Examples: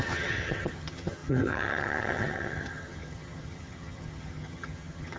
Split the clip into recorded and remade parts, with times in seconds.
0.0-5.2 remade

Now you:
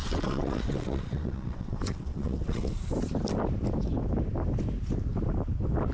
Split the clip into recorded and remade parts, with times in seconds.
0.0-2.7 remade; 2.7-5.9 recorded

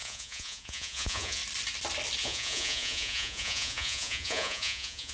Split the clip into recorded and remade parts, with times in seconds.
0.0-1.4 remade; 1.4-2.2 recorded; 2.2-5.1 remade

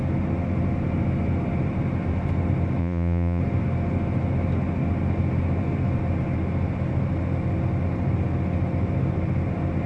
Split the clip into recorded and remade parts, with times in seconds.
0.0-2.8 recorded; 2.8-3.4 remade; 3.4-9.9 recorded

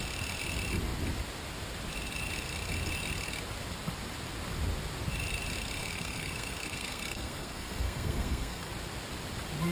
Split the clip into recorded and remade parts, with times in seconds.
0.0-5.8 recorded; 5.8-8.7 remade; 8.7-9.7 recorded

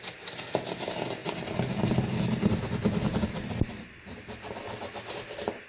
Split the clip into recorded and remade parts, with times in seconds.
0.0-5.7 recorded

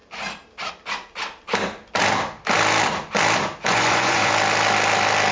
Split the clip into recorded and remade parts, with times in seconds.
0.0-3.7 recorded; 3.7-4.3 remade; 4.3-5.3 recorded

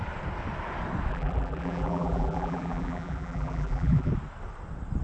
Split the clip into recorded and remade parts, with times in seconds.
0.0-1.1 recorded; 1.1-4.1 remade; 4.1-5.0 recorded